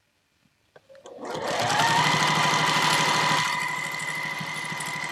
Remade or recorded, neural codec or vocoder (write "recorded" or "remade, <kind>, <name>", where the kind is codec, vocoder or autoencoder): recorded